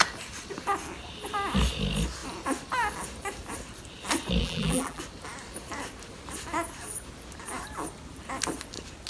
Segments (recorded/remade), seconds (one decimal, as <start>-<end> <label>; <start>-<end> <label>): 0.0-4.4 recorded; 4.4-5.0 remade; 5.0-9.1 recorded